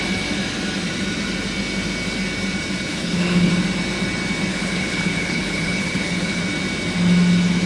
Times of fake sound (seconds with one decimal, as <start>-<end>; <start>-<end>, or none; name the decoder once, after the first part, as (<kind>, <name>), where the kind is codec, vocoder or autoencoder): 2.9-3.5 (codec, HILCodec); 4.5-6.4